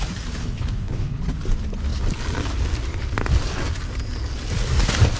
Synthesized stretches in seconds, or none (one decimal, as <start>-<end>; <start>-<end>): 0.4-1.2